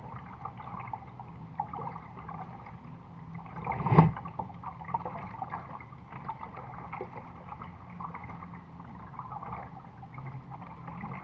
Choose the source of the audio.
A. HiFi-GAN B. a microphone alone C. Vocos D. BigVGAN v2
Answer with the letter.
B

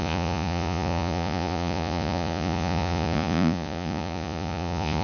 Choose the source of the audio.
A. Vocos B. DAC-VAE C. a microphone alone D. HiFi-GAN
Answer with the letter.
A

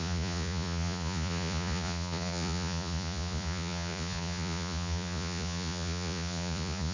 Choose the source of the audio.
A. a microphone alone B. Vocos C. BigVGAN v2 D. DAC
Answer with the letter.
B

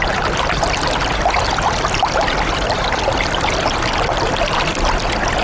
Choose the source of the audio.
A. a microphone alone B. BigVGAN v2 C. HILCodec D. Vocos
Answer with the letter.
A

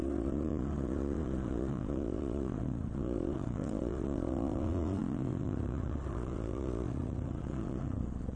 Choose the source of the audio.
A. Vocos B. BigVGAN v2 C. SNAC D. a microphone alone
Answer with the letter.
A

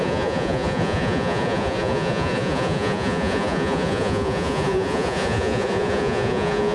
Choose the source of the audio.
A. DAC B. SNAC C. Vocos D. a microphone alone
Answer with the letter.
C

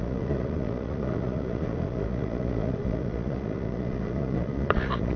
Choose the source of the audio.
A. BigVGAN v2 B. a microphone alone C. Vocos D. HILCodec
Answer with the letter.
C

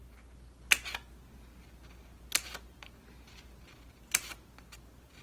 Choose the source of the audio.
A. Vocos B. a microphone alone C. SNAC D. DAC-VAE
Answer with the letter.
B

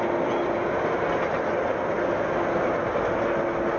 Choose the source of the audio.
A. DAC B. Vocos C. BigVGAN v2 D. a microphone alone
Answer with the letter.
D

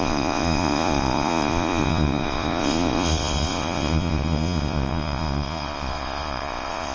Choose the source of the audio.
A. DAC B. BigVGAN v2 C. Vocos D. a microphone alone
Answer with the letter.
C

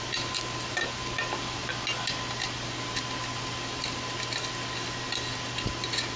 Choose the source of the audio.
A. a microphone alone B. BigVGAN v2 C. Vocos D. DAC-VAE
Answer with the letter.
A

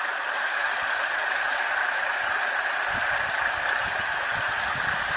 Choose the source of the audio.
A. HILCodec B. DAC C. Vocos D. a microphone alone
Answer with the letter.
D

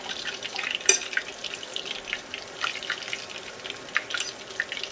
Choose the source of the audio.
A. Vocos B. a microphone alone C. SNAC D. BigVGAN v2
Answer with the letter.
B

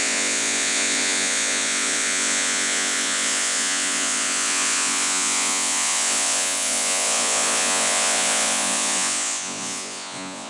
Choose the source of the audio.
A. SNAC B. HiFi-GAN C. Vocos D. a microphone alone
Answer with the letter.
C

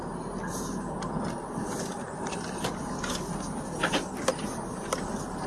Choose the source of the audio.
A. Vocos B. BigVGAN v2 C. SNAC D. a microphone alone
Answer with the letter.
D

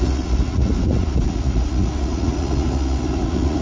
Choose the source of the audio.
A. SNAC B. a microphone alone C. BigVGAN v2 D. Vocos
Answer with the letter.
D